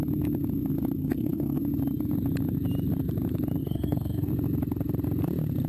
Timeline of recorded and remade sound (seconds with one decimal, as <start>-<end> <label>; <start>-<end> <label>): 0.0-1.0 recorded; 1.0-1.6 remade; 1.6-3.6 recorded; 3.6-4.3 remade; 4.3-5.7 recorded